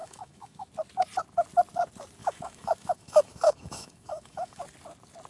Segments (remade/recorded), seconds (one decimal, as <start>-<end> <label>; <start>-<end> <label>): 0.0-0.7 remade; 0.7-2.2 recorded; 2.2-4.6 remade; 4.6-5.3 recorded